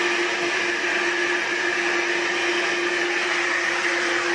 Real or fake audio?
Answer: real